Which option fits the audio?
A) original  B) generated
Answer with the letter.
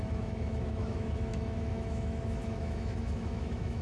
B